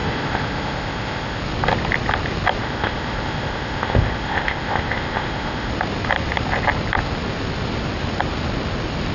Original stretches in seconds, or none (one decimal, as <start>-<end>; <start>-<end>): 1.4-2.6; 5.7-9.1